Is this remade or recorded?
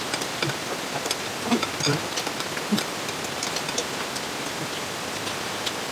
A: remade